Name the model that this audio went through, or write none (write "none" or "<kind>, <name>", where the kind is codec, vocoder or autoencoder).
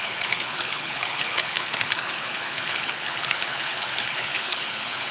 codec, HILCodec